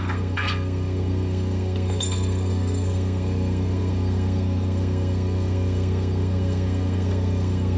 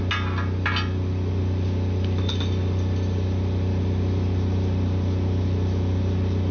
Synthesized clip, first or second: first